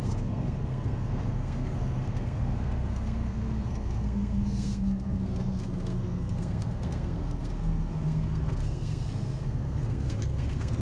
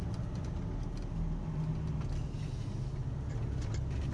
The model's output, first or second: first